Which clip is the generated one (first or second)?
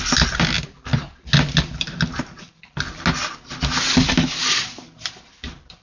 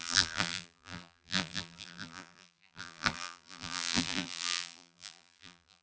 second